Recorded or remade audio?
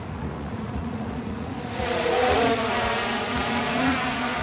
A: remade